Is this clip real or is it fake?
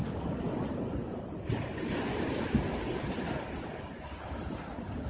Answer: fake